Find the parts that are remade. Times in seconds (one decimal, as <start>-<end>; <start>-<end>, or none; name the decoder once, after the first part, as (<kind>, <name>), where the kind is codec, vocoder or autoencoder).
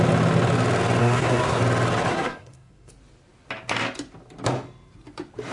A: 1.0-1.6 (codec, SNAC); 2.1-2.9